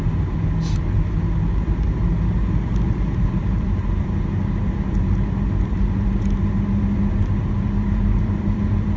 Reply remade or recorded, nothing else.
recorded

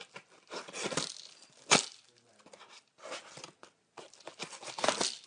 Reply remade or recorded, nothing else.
recorded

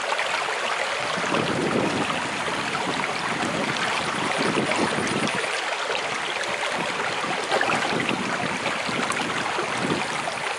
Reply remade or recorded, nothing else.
recorded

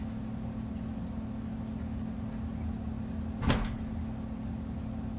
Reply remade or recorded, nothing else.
recorded